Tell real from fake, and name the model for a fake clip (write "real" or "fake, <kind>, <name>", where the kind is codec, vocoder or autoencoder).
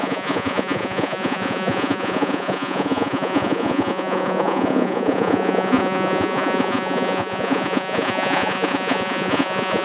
fake, vocoder, Vocos